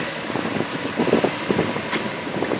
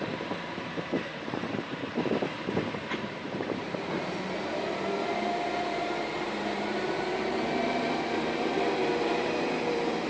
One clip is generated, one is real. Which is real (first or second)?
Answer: first